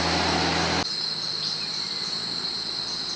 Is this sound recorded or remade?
recorded